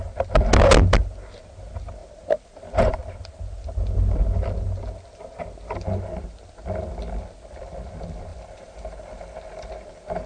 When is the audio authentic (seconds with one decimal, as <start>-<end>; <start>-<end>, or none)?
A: 0.0-8.3; 9.7-10.3